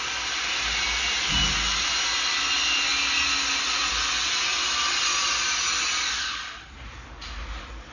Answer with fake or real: real